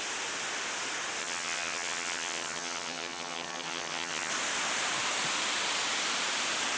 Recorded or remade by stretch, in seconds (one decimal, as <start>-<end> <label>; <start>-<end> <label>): 0.0-1.2 recorded; 1.2-4.3 remade; 4.3-6.8 recorded